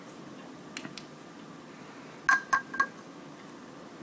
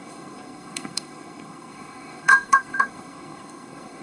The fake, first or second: second